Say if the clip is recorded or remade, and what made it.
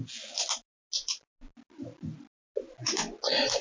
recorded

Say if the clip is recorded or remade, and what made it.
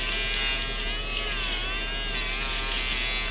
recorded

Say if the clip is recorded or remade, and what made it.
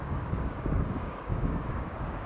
remade, codec, DAC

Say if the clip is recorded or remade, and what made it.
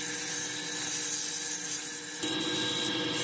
recorded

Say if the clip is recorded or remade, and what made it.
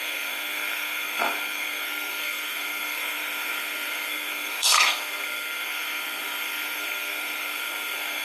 remade, codec, SNAC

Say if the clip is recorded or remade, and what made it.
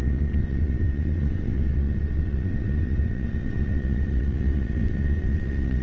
remade, vocoder, WaveNeXt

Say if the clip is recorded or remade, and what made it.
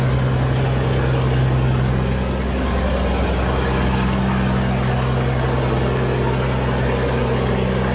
recorded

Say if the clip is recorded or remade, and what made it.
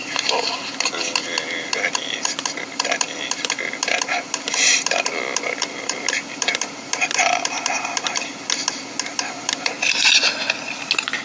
recorded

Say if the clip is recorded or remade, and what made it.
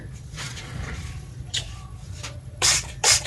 remade, vocoder, Vocos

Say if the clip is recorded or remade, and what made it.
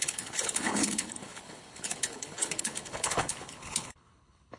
remade, codec, HILCodec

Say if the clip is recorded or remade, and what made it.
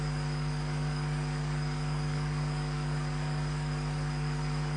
remade, codec, DAC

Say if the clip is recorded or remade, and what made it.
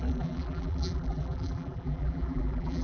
remade, vocoder, BigVGAN v2